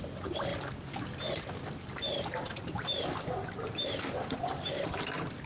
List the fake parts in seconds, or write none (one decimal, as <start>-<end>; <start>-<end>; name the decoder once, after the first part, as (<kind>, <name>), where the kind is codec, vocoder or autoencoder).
0.0-0.5 (vocoder, BigVGAN v2); 2.6-5.5